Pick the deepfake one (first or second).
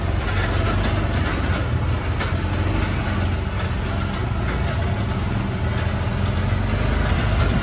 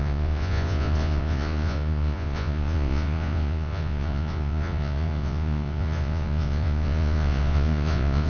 second